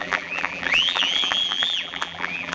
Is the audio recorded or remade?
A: remade